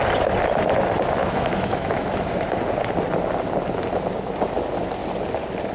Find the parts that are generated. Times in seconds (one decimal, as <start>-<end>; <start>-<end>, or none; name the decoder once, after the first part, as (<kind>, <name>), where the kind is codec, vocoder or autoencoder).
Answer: 1.2-2.6 (autoencoder, DAC-VAE)